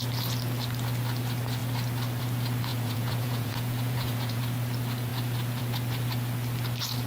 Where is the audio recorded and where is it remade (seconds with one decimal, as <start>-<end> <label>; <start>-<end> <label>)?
0.0-2.7 recorded; 2.7-4.4 remade; 4.4-7.1 recorded